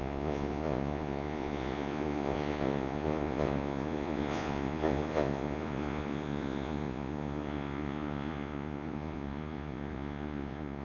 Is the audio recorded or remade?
remade